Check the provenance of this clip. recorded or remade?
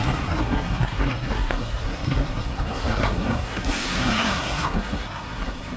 remade